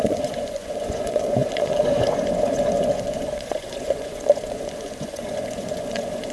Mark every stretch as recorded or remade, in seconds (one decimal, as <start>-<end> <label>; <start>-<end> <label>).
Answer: 0.0-6.3 remade

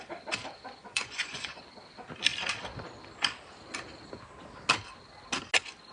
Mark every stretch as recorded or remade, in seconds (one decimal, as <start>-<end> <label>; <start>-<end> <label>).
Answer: 0.0-0.8 recorded; 0.8-1.6 remade; 1.6-5.9 recorded

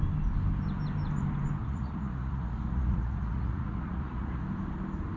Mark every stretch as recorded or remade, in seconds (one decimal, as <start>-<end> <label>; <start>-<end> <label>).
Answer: 0.0-1.6 recorded; 1.6-4.4 remade; 4.4-5.2 recorded